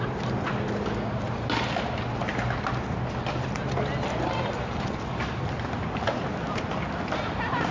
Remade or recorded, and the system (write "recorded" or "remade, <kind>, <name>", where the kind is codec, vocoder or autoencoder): recorded